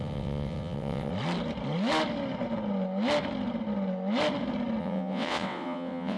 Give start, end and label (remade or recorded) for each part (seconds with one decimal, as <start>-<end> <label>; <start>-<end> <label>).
0.0-1.1 remade; 1.1-4.8 recorded; 4.8-6.2 remade